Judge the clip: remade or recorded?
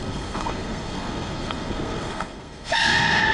remade